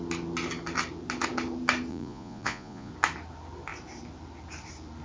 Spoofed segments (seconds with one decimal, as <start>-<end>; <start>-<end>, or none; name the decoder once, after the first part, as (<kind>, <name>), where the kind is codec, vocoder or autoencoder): 1.9-2.9 (vocoder, Vocos)